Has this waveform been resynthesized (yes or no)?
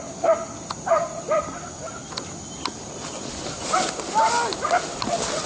no